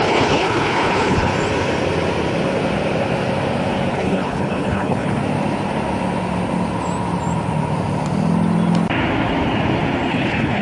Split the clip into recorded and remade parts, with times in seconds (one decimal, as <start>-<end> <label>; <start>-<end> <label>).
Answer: 0.0-1.3 remade; 1.3-3.9 recorded; 3.9-5.2 remade; 5.2-10.1 recorded; 10.1-10.6 remade